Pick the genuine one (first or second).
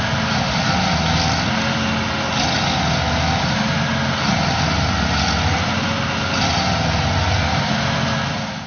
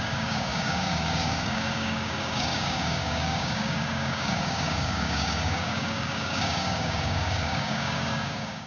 first